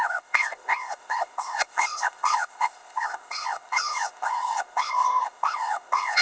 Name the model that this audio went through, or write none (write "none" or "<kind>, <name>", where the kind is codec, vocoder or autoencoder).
codec, ZipCodec